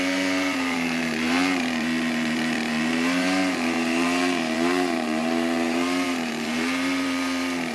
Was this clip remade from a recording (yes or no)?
yes